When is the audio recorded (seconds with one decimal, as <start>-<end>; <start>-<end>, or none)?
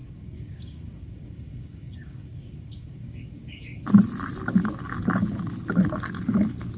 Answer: 3.9-6.8